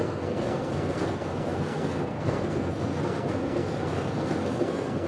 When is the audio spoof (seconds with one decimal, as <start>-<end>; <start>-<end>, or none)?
0.0-5.1